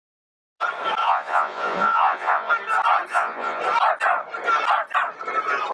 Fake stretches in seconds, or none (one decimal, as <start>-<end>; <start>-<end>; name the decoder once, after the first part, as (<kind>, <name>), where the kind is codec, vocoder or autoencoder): 1.0-2.5 (vocoder, Vocos); 3.1-3.6